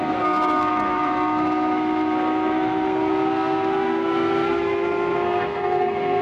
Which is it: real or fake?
fake